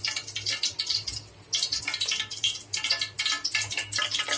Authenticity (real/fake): real